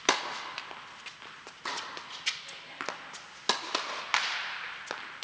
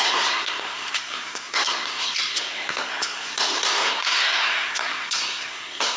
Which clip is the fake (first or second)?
second